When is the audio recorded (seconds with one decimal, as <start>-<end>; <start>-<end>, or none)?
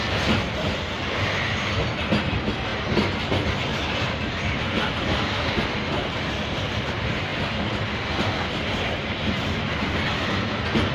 0.0-10.9